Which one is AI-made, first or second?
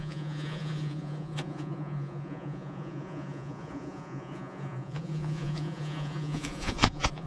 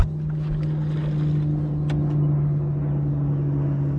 first